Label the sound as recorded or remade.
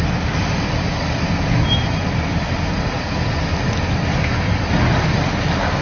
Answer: recorded